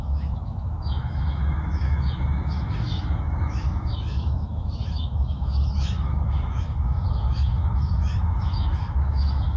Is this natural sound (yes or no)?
no